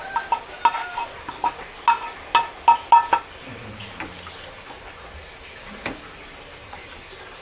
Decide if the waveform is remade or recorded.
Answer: recorded